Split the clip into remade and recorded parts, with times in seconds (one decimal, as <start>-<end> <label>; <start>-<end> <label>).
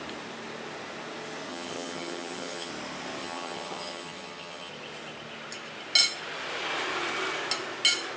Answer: 0.0-1.5 recorded; 1.5-2.7 remade; 2.7-3.2 recorded; 3.2-4.7 remade; 4.7-8.2 recorded